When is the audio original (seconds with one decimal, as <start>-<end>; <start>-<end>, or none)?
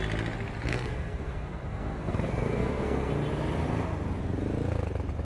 0.0-0.7; 3.1-5.2